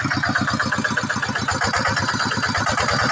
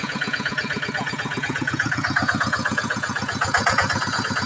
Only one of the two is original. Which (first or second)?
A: first